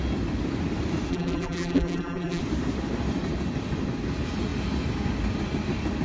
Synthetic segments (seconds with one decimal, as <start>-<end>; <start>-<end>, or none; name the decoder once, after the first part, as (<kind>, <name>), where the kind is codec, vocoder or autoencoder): 1.1-2.4 (vocoder, BigVGAN v2)